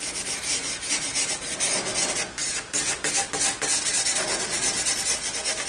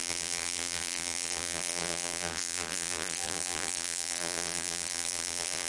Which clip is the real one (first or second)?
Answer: first